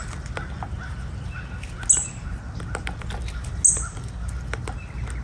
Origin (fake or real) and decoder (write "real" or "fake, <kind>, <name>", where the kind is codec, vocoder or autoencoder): real